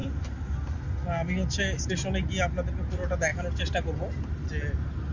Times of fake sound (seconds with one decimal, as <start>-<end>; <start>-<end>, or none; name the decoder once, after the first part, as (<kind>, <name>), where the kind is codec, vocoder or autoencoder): 0.0-1.9 (vocoder, BigVGAN v2); 3.3-4.2